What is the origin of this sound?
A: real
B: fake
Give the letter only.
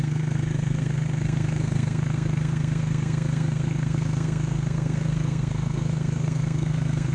B